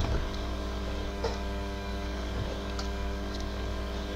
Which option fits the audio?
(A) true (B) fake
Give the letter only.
B